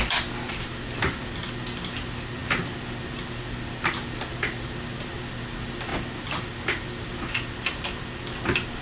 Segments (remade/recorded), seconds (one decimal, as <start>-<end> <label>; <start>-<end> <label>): 0.0-8.8 recorded